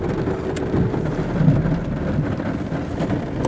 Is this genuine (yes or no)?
yes